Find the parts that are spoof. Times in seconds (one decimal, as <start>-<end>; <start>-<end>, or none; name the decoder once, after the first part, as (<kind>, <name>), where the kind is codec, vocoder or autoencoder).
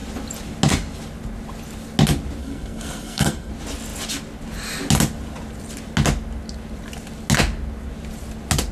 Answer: 2.4-3.5 (codec, SNAC)